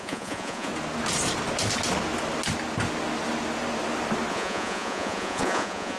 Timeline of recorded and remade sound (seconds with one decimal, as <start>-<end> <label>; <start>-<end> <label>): 0.0-0.7 remade; 0.7-4.3 recorded; 4.3-6.0 remade